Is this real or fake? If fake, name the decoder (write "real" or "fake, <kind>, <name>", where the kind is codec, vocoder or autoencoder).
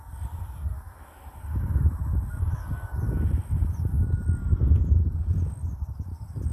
real